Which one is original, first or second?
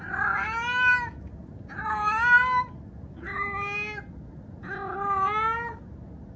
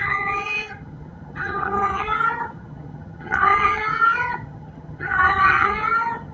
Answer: first